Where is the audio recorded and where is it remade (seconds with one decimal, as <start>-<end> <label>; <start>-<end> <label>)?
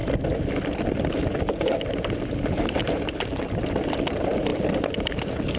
0.0-2.8 recorded; 2.8-3.5 remade; 3.5-5.6 recorded